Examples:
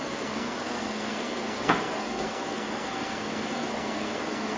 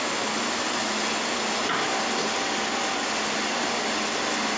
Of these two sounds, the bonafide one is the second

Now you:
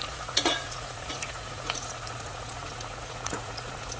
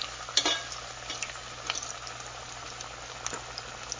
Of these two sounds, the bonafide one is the second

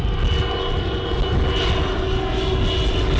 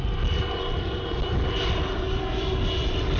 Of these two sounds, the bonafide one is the first